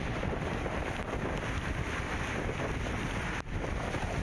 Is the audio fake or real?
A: real